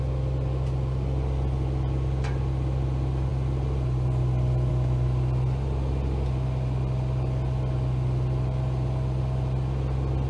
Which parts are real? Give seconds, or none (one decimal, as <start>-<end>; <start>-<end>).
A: 0.0-10.3